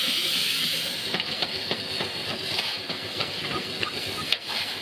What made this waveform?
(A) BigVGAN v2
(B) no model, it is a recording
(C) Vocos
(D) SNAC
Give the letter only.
D